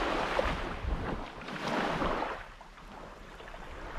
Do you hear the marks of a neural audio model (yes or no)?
no